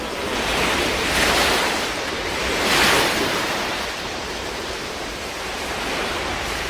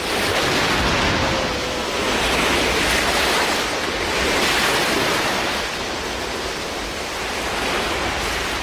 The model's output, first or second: first